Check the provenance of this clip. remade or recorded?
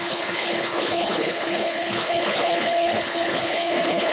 remade